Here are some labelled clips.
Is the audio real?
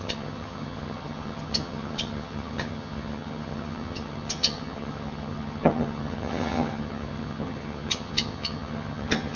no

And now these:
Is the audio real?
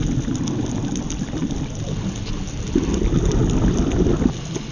yes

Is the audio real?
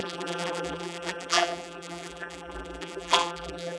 no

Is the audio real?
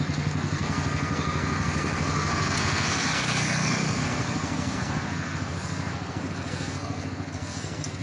no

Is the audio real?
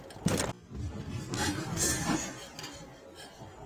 yes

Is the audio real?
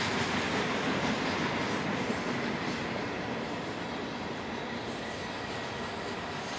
yes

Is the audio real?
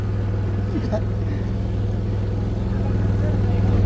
yes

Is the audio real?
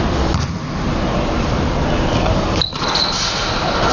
yes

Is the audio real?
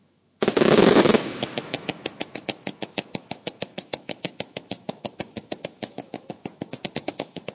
no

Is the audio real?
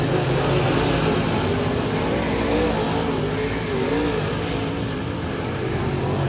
yes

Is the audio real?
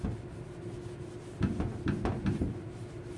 yes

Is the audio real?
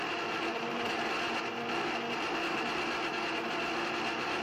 yes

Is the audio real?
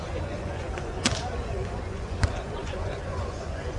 no